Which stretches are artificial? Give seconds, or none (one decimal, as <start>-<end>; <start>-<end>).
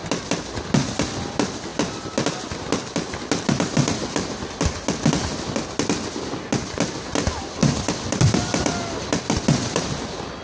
7.6-9.2